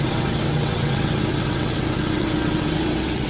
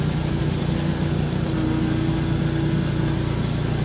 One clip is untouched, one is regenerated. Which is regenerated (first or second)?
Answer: first